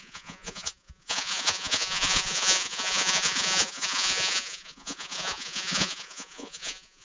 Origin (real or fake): fake